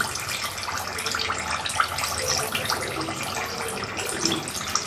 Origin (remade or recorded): recorded